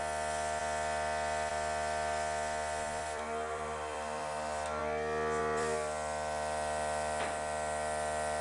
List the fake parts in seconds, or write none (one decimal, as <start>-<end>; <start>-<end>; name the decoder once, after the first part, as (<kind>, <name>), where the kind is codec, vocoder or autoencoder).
0.0-0.6 (vocoder, BigVGAN v2); 1.5-4.8; 5.4-8.4